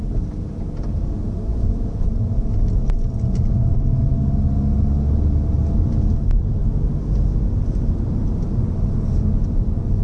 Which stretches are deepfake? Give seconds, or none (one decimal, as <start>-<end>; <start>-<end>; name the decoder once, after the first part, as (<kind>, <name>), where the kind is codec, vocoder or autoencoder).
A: 1.5-2.0 (vocoder, Vocos)